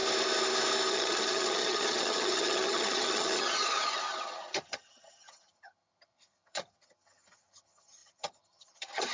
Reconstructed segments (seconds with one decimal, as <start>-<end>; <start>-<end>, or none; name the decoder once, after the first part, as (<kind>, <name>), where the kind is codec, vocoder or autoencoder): 0.9-9.1 (vocoder, HiFi-GAN)